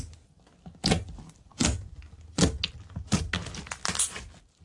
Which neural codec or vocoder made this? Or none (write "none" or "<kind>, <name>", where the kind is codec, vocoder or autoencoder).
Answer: none